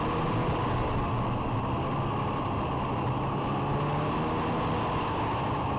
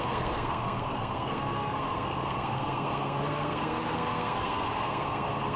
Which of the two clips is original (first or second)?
first